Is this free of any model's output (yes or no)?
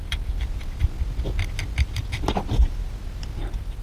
yes